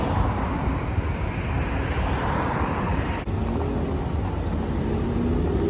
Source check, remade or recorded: recorded